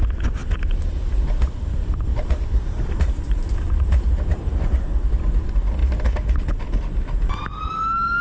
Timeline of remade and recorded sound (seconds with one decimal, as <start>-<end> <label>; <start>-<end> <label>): 0.0-2.1 recorded; 2.1-5.1 remade; 5.1-5.8 recorded; 5.8-6.4 remade; 6.4-8.2 recorded